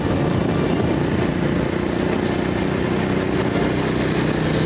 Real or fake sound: real